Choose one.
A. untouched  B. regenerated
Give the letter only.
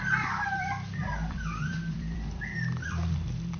B